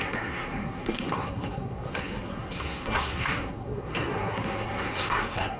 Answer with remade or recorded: remade